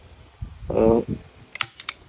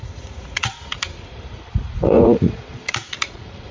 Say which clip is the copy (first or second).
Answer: second